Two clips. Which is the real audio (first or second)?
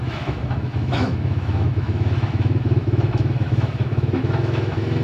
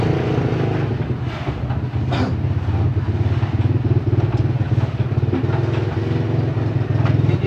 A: second